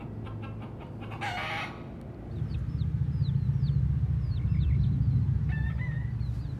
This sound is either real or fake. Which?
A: real